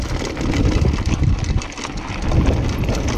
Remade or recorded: recorded